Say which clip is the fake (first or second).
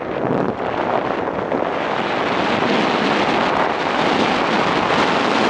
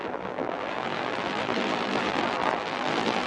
second